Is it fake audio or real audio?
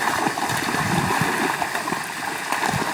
real